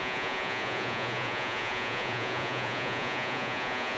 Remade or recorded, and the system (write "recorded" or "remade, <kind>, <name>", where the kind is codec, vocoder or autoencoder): remade, vocoder, Vocos